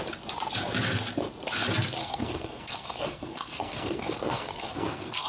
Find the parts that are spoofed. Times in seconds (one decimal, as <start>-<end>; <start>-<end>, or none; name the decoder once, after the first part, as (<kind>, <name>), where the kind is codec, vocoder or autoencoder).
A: 2.0-5.3 (codec, SNAC)